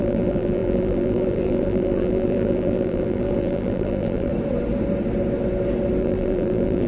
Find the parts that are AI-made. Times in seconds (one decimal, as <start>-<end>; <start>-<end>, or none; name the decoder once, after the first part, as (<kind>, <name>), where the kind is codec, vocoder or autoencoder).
0.0-4.3 (vocoder, BigVGAN v2); 6.0-6.9